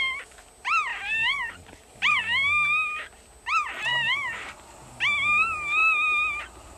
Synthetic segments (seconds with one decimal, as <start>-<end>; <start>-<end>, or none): 0.9-2.2; 3.9-4.6